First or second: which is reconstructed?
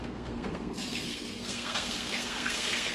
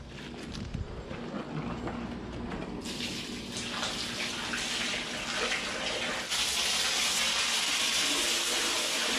first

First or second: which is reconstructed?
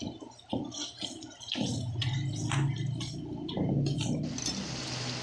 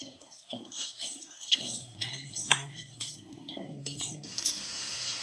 second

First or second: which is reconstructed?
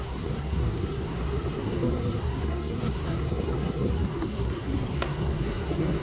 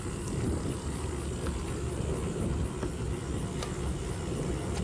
first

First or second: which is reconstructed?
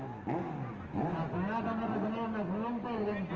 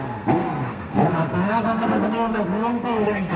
second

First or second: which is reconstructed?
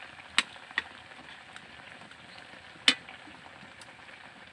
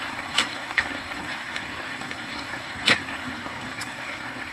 second